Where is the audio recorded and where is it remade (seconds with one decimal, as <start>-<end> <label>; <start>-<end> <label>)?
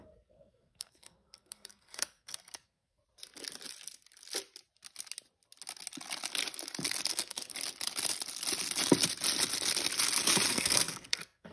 0.0-3.0 remade; 3.0-7.1 recorded; 7.1-7.5 remade; 7.5-10.5 recorded; 10.5-11.5 remade